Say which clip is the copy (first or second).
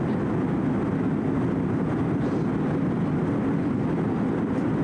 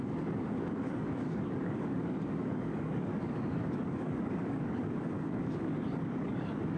second